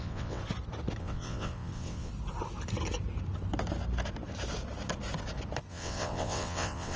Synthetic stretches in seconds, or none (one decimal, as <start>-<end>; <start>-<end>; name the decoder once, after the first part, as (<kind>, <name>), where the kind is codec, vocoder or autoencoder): 0.0-0.4 (vocoder, WaveNeXt); 1.0-2.1; 5.7-7.0